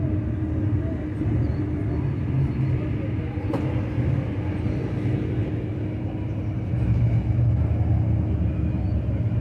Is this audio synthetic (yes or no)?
no